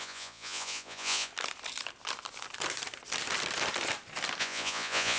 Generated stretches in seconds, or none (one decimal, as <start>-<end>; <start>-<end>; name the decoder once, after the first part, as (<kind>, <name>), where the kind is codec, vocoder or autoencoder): 0.0-1.3 (vocoder, Vocos); 4.4-5.2